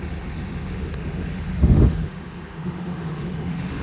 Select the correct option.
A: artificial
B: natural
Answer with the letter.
A